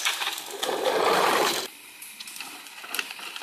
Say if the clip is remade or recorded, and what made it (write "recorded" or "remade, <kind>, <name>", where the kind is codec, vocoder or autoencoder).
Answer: remade, vocoder, BigVGAN v2